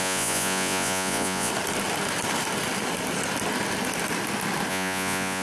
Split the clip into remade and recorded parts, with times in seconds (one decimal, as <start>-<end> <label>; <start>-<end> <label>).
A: 0.0-1.5 remade; 1.5-4.7 recorded; 4.7-5.4 remade